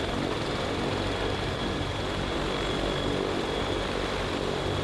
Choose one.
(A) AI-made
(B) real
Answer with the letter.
B